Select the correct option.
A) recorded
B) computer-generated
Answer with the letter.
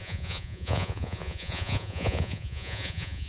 B